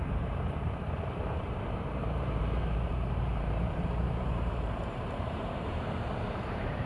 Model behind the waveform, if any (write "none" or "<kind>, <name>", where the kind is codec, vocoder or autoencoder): vocoder, BigVGAN v2